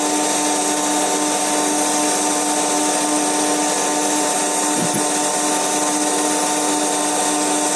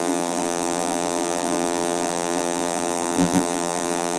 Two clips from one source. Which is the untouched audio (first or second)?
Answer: first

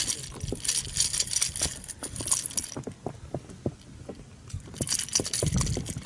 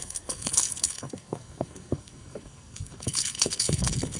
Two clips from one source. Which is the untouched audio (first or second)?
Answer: first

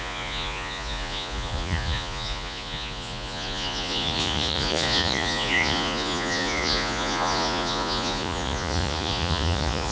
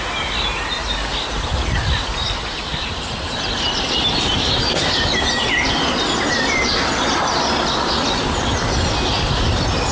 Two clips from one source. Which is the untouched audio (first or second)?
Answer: second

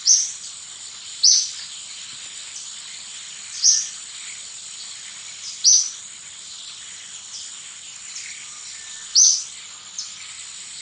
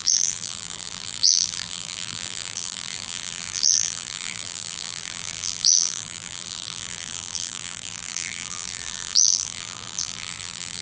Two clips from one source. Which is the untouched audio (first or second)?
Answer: first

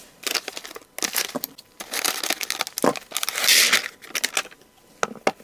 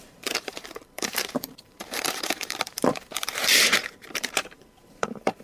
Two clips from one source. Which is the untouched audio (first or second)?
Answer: first